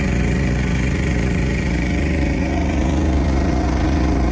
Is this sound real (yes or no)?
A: no